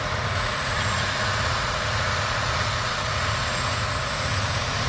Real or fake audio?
fake